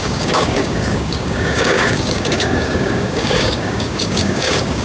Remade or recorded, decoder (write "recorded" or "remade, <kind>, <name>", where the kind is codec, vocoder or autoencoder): remade, codec, DAC